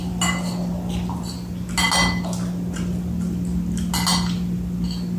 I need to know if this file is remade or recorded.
recorded